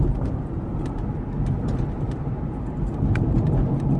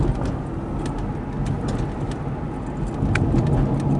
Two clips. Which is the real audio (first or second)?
second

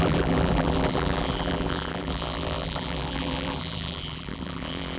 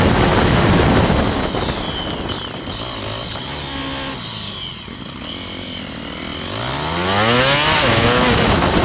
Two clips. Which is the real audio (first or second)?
second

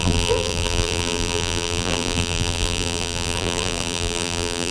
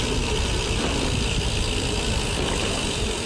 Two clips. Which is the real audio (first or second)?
second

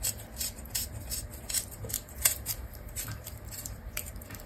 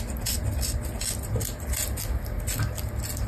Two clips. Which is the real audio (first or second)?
second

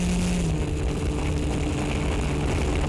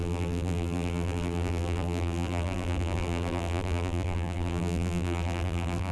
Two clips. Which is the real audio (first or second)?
first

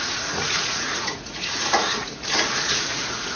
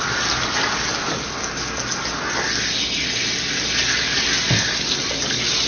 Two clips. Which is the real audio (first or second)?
second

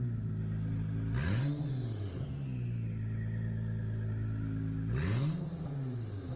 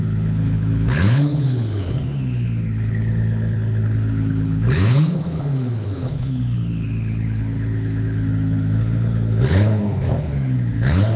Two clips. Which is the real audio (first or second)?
first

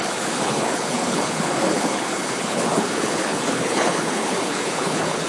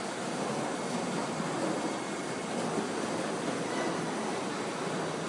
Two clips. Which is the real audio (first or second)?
second